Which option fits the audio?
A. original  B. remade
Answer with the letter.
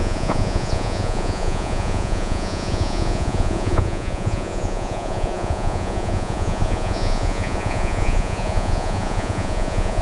B